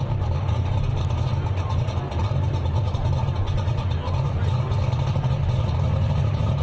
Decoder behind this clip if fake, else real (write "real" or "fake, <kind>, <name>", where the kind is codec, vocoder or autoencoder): real